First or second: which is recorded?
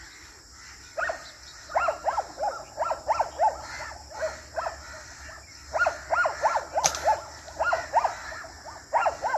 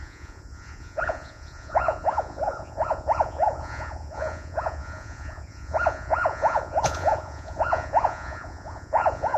first